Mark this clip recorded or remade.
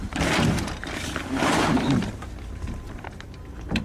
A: remade